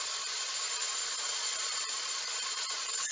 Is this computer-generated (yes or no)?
yes